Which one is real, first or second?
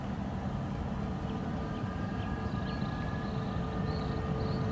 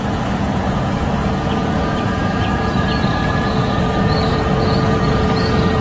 first